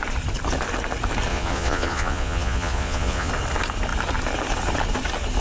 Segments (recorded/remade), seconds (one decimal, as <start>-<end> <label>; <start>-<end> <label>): 0.0-1.3 recorded; 1.3-3.3 remade; 3.3-5.4 recorded